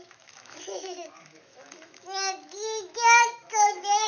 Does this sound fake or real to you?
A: fake